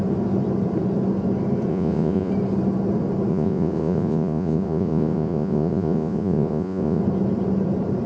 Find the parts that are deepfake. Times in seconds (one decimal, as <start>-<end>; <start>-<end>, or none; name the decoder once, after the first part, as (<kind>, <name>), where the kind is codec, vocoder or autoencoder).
1.7-2.3 (vocoder, Vocos); 3.3-7.0